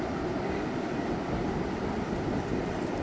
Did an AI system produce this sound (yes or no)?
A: no